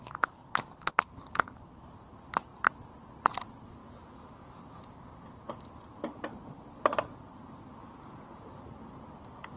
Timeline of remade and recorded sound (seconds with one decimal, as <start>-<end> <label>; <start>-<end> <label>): 0.0-3.8 recorded; 3.8-4.6 remade; 4.6-7.8 recorded; 7.8-8.5 remade; 8.5-9.6 recorded